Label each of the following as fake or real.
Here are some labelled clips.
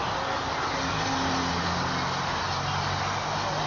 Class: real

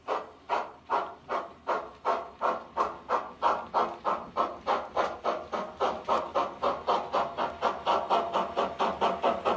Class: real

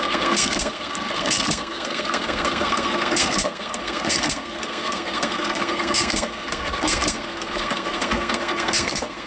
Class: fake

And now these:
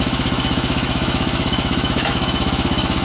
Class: fake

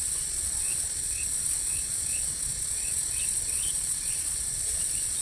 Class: fake